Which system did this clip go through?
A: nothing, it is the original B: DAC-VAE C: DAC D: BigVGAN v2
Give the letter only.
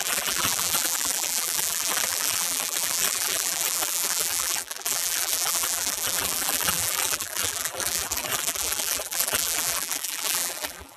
D